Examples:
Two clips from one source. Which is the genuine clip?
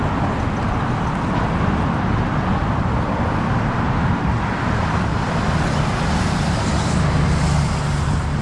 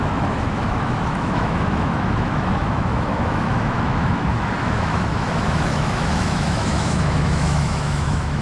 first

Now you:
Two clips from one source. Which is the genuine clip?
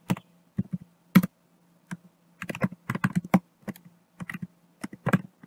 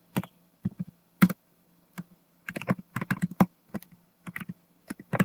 first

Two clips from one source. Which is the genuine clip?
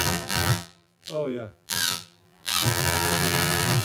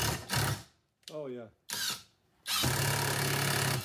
second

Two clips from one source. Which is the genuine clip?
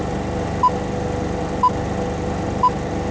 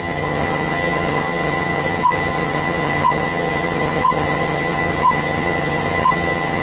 first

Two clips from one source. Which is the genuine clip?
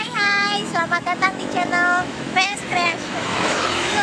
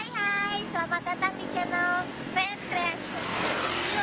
second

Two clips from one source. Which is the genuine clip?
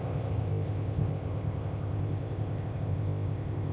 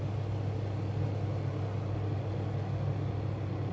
second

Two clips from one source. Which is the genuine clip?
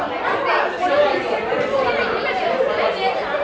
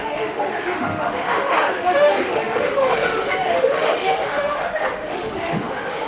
first